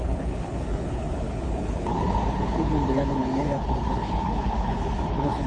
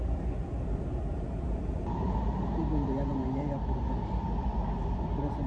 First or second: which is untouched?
second